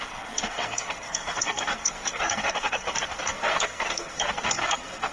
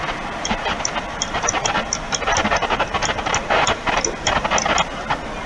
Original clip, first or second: second